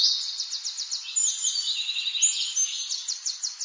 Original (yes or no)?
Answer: yes